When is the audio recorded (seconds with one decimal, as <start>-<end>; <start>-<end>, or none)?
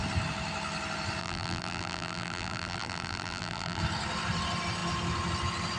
0.0-1.2; 3.8-5.8